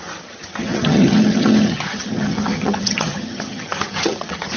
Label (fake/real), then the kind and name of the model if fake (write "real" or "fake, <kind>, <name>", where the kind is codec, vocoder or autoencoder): fake, vocoder, HiFi-GAN